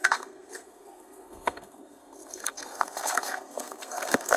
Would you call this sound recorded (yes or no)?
no